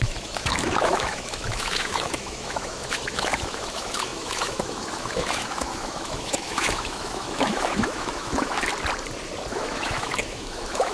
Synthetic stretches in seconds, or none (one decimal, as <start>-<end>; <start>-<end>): 0.0-8.7; 9.5-10.9